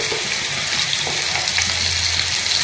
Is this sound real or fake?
real